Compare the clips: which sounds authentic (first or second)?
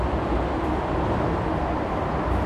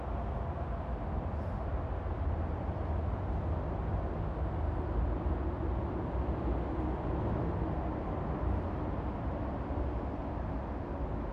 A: second